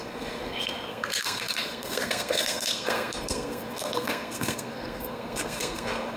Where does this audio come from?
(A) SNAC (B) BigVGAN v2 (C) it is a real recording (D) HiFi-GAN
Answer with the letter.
A